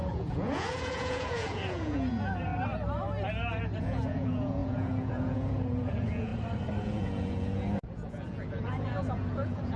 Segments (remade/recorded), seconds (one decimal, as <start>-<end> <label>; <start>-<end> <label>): 0.0-2.5 remade; 2.5-3.8 recorded; 3.8-6.3 remade; 6.3-6.8 recorded; 6.8-9.8 remade